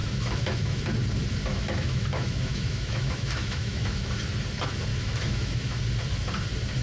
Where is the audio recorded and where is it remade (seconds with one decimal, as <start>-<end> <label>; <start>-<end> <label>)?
0.0-0.8 remade; 0.8-1.5 recorded; 1.5-4.2 remade; 4.2-4.9 recorded; 4.9-5.8 remade; 5.8-6.8 recorded